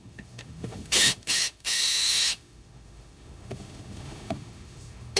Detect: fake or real fake